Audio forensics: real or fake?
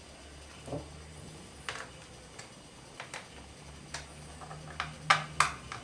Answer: real